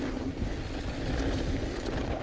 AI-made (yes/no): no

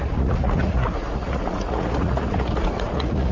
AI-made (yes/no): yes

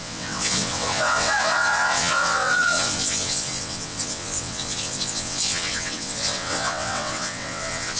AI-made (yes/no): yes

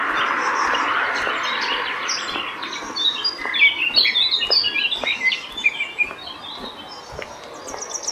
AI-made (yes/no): no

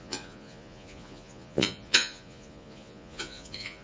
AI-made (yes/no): yes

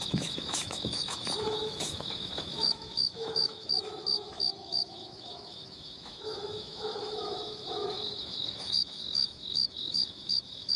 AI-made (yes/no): yes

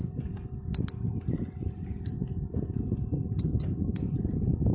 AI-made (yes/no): no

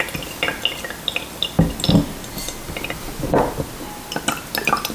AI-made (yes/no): no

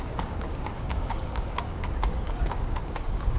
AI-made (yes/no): yes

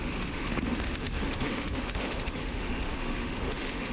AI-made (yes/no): yes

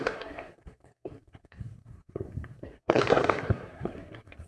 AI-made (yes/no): yes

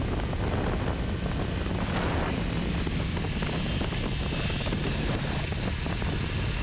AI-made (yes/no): no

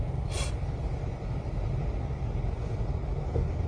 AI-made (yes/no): no